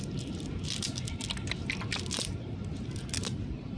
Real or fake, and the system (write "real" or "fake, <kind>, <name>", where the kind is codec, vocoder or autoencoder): real